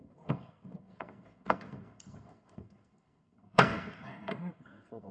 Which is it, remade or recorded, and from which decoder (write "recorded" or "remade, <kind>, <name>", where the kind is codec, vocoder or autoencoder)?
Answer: remade, codec, SNAC